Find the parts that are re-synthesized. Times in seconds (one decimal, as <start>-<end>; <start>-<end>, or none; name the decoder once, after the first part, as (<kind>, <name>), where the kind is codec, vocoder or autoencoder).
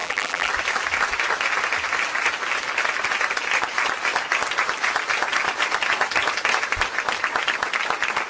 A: 0.0-0.5 (vocoder, BigVGAN v2)